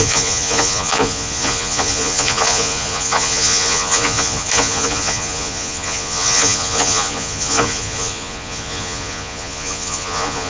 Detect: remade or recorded remade